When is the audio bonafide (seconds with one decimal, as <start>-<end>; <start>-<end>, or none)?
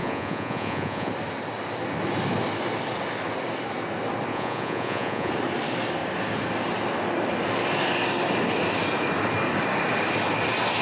1.1-4.3; 5.3-10.8